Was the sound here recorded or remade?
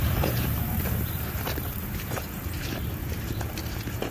remade